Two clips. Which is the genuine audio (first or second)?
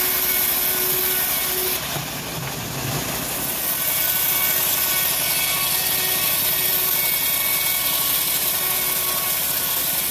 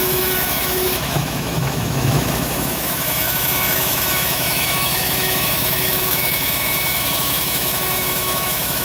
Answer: first